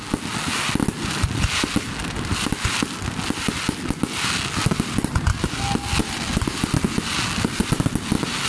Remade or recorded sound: recorded